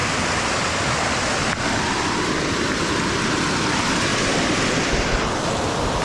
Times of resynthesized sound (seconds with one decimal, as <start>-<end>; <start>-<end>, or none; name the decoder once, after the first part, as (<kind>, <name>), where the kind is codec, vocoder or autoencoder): none